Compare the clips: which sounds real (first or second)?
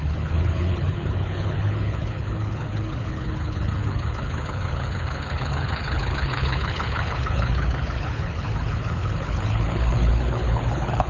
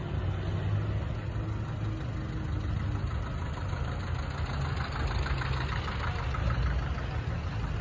second